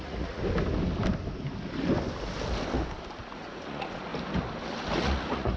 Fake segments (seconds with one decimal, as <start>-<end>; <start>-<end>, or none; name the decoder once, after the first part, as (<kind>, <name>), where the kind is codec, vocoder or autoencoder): 0.0-0.4 (vocoder, Vocos); 3.2-4.1; 5.0-5.6